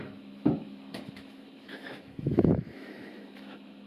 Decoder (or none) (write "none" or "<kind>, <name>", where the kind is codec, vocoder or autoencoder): autoencoder, DAC-VAE